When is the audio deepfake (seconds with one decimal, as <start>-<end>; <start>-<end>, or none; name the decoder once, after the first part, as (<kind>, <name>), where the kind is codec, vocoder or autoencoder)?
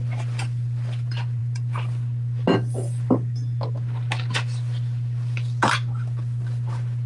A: none